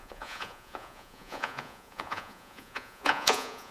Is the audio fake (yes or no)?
yes